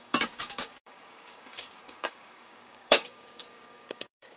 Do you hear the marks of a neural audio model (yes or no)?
yes